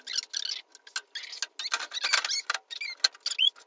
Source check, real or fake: real